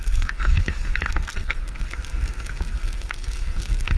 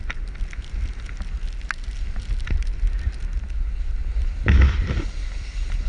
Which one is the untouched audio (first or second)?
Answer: second